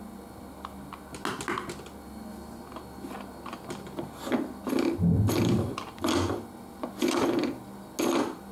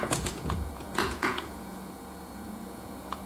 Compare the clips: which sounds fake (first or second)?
second